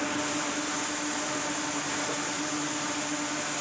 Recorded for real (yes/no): yes